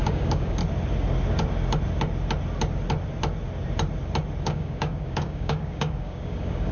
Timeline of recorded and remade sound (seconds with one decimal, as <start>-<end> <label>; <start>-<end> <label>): 0.0-0.6 remade; 0.6-4.4 recorded; 4.4-6.7 remade